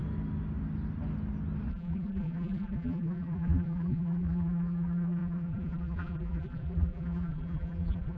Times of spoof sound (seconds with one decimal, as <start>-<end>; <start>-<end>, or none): 1.7-8.2

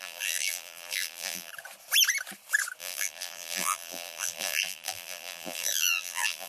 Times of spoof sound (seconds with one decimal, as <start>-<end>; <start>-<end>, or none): 0.0-1.5; 2.8-6.5

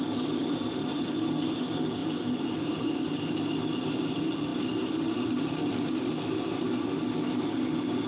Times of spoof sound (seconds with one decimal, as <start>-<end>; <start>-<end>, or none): none

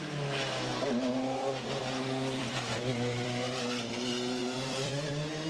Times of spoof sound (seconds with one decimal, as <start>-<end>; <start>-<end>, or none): 1.4-3.6; 4.4-5.1

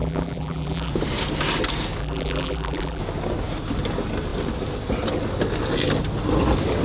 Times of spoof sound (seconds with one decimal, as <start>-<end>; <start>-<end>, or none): 0.0-0.9; 2.0-3.0

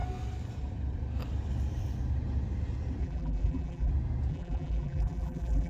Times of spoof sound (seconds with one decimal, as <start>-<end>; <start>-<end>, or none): 3.0-3.9; 4.3-5.7

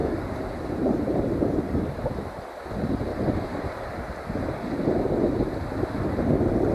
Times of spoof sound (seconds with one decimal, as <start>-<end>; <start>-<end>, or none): 0.0-1.6; 3.1-3.7